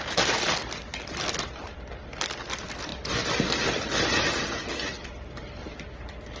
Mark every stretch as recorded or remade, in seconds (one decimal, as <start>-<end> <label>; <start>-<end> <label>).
0.0-0.6 recorded; 0.6-1.9 remade; 1.9-2.9 recorded; 2.9-6.4 remade